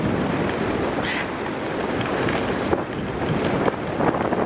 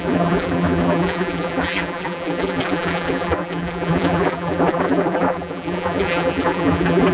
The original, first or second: first